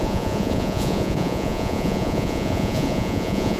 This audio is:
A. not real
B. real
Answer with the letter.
A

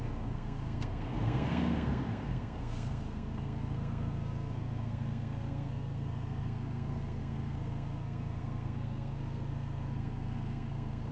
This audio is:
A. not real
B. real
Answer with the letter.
A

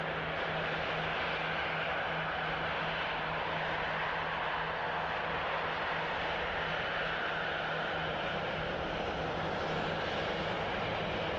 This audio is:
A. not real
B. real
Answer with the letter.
B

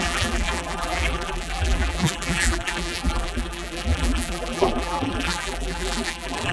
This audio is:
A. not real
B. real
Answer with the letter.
A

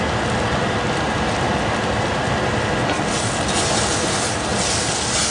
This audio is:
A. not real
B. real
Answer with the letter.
B